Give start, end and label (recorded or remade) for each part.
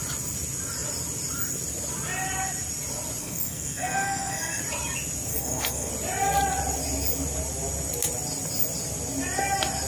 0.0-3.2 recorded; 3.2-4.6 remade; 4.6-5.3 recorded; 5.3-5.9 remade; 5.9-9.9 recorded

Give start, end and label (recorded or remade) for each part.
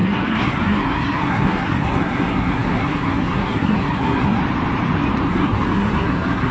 0.0-4.4 remade; 4.4-5.3 recorded; 5.3-6.5 remade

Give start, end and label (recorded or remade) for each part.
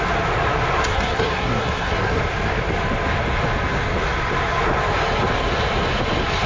0.0-0.8 recorded; 0.8-2.2 remade; 2.2-6.5 recorded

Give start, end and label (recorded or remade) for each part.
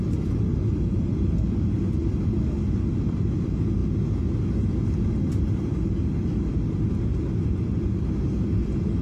0.0-9.0 recorded